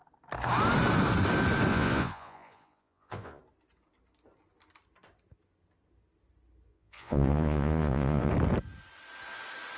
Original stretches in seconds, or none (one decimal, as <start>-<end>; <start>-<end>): 0.0-1.7; 3.4-6.7; 8.3-9.8